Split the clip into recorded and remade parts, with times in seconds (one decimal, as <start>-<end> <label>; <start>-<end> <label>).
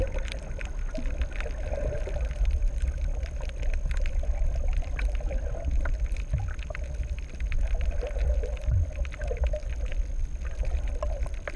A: 0.0-11.6 recorded